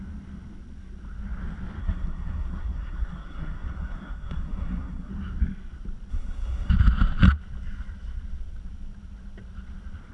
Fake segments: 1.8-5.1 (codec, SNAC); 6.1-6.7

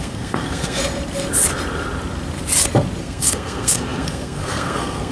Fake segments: 0.0-0.8 (codec, SNAC); 3.0-5.1

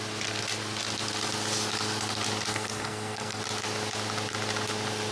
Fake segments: 2.5-3.4 (codec, SNAC)

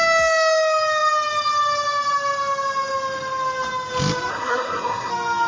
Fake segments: 4.3-5.1 (codec, SNAC)

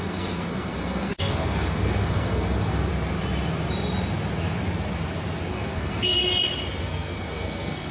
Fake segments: 0.0-2.9 (codec, SNAC); 5.5-6.2; 6.8-7.9

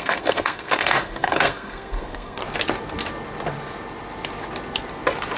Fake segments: 0.0-2.4 (codec, SNAC)

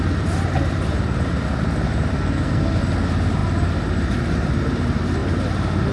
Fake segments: 2.1-2.8 (codec, SNAC)